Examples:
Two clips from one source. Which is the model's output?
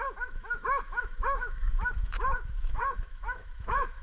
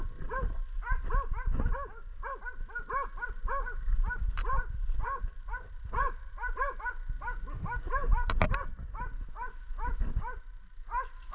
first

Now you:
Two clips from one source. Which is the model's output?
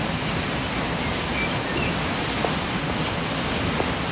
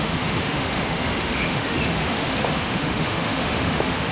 second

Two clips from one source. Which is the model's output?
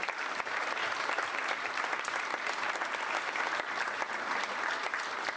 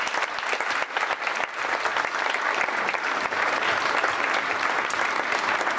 first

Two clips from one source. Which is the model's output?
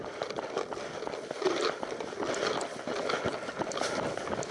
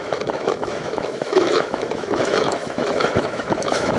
second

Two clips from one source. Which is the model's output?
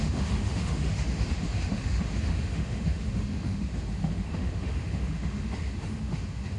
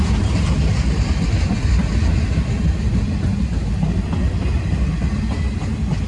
first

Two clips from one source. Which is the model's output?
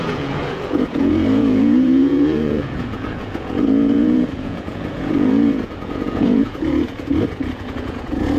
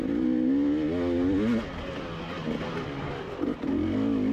first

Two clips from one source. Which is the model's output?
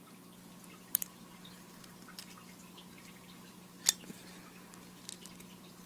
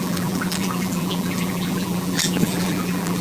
second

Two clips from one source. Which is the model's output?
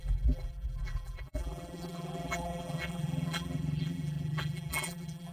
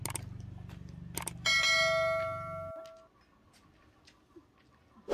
first